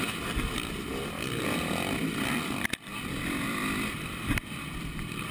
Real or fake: fake